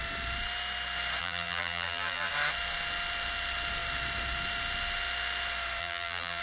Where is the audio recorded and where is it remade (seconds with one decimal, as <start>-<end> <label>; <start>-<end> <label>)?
0.0-1.2 recorded; 1.2-2.3 remade; 2.3-5.8 recorded; 5.8-6.4 remade